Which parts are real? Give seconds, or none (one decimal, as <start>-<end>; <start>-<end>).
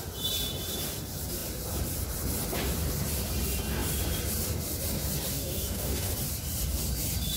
0.0-5.3; 6.1-7.4